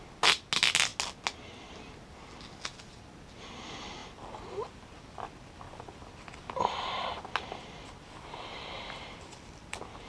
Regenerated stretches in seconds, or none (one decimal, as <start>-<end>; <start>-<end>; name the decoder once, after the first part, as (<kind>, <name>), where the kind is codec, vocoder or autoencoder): none